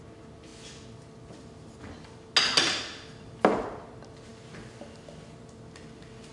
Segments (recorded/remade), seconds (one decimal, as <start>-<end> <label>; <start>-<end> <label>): 0.0-6.3 recorded